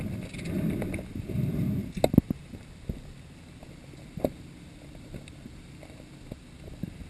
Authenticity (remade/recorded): recorded